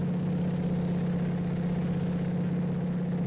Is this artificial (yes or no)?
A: no